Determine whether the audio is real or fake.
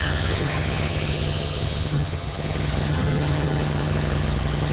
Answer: fake